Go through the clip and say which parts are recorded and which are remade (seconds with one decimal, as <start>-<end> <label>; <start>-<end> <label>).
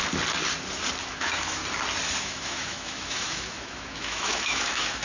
0.0-1.0 recorded; 1.0-1.6 remade; 1.6-2.2 recorded; 2.2-5.0 remade